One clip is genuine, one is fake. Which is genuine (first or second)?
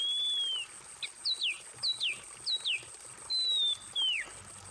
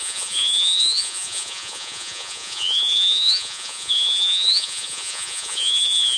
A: first